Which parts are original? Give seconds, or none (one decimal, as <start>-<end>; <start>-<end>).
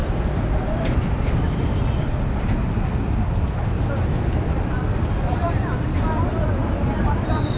1.8-6.6